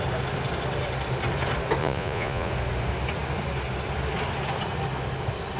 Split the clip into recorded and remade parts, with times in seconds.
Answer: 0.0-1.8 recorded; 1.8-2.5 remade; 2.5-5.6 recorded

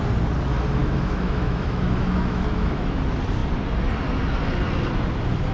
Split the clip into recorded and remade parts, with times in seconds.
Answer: 0.0-0.8 recorded; 0.8-3.0 remade; 3.0-5.5 recorded

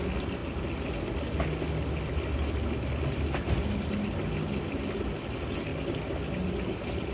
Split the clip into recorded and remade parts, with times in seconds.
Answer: 0.0-7.1 recorded

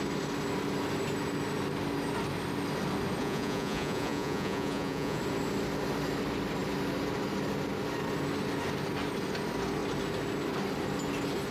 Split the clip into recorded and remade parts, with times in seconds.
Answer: 0.0-3.2 recorded; 3.2-5.2 remade; 5.2-11.5 recorded